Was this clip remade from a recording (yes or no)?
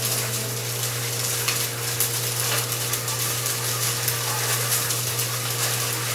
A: no